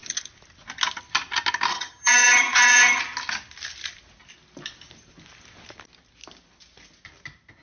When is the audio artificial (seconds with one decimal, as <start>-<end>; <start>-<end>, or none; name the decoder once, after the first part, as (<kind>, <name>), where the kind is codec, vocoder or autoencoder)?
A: 1.7-3.0 (vocoder, HiFi-GAN)